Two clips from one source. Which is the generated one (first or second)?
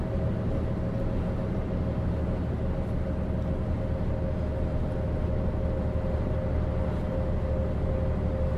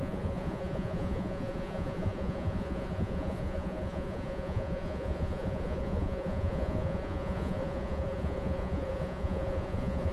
second